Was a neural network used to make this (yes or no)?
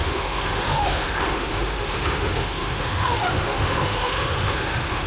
yes